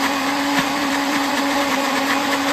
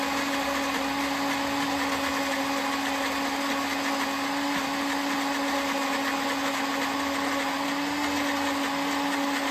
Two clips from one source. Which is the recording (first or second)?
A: second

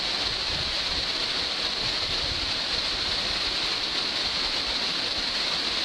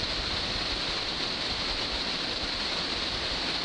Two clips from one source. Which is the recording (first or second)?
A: first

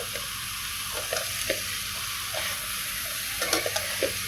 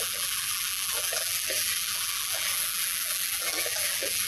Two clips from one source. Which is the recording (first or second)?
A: first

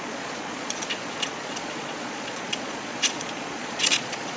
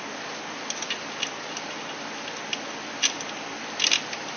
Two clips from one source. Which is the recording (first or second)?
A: second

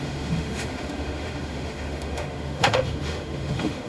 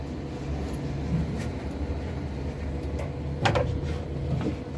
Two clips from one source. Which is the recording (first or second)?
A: second